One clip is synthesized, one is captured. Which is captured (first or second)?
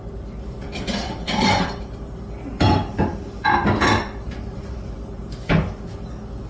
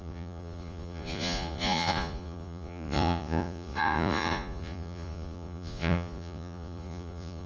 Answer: first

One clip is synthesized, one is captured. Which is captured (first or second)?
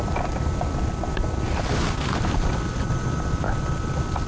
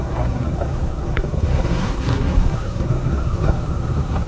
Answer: first